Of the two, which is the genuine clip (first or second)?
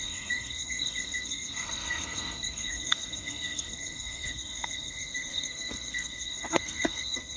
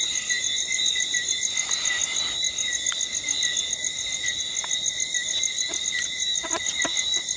second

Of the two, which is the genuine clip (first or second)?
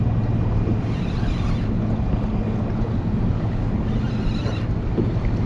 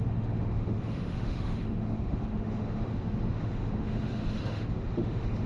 first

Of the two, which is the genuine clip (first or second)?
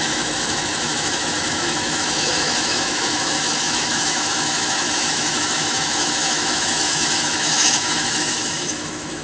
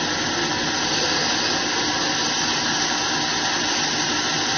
second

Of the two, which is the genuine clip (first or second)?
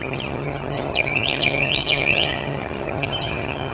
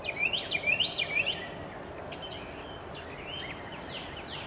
second